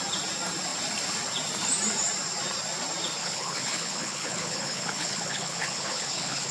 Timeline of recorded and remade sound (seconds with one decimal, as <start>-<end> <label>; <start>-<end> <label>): 0.0-3.2 recorded; 3.2-6.5 remade